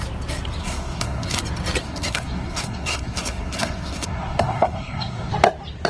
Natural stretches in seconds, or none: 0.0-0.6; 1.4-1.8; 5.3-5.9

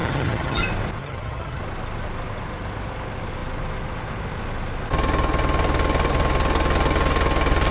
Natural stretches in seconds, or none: 0.6-1.0; 1.6-7.7

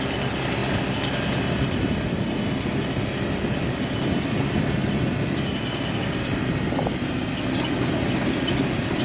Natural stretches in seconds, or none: 0.0-6.0; 7.1-9.0

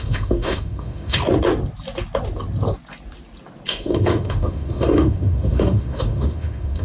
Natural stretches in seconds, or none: 1.2-3.7

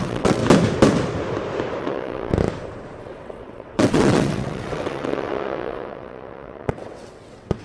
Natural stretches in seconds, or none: 0.4-1.8; 2.3-3.0

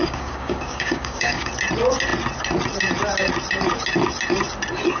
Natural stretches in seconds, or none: 1.5-5.0

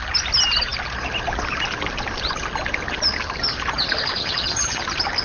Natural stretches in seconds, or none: 0.0-4.2; 4.8-5.2